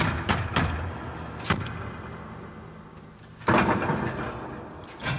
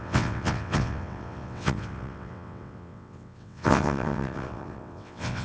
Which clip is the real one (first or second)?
first